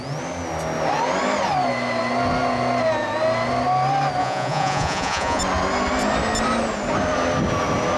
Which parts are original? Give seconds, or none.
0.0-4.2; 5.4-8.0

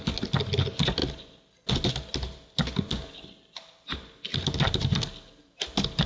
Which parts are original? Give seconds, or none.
0.0-6.1

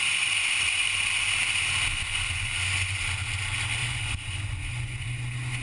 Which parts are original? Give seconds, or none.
0.0-1.9; 3.0-3.8

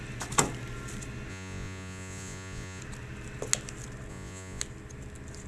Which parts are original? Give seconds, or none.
0.0-1.3; 2.8-4.1; 4.6-5.5

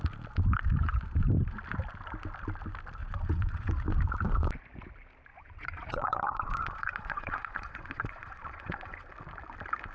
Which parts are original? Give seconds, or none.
0.0-3.0; 3.8-5.3; 9.1-9.9